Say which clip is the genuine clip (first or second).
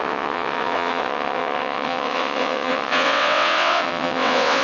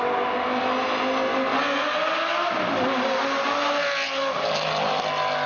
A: second